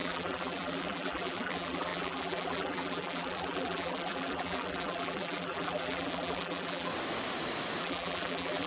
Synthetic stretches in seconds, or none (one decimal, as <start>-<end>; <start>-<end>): 0.0-6.9; 7.8-8.7